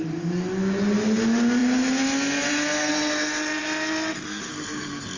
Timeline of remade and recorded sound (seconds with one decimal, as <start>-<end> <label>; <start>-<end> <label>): 0.0-5.2 recorded